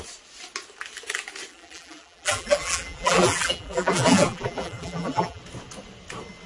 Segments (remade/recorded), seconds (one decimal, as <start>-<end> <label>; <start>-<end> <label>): 0.0-1.5 recorded; 1.5-5.4 remade; 5.4-6.5 recorded